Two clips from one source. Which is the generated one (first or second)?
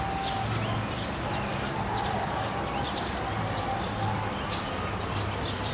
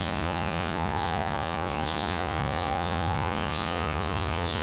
second